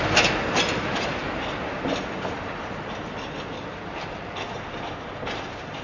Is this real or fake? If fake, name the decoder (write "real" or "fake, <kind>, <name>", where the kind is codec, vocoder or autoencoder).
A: real